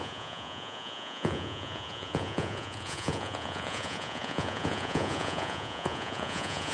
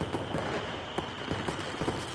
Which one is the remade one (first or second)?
first